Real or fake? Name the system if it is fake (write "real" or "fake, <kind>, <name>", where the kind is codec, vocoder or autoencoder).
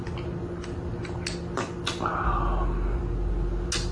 real